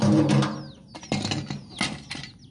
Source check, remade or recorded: recorded